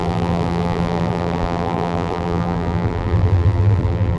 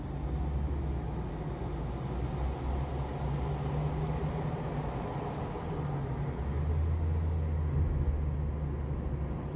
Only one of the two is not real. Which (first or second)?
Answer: first